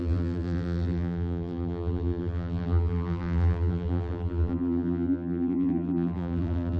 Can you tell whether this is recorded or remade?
remade